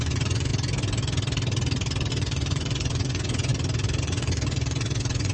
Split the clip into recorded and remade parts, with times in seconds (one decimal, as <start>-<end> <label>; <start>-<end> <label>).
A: 0.0-0.5 remade; 0.5-2.1 recorded; 2.1-3.5 remade; 3.5-4.0 recorded; 4.0-5.3 remade